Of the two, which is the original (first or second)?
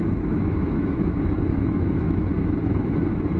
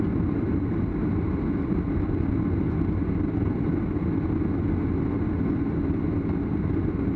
second